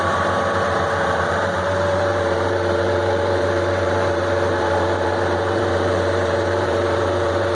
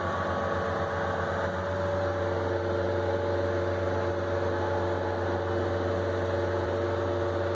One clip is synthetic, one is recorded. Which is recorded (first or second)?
second